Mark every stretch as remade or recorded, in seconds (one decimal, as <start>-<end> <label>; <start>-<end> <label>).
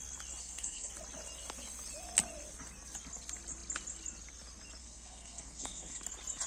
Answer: 0.0-0.4 recorded; 0.4-0.9 remade; 0.9-4.8 recorded; 4.8-6.0 remade; 6.0-6.5 recorded